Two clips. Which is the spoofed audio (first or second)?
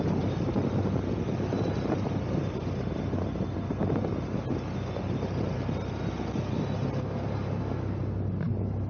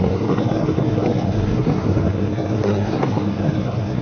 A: second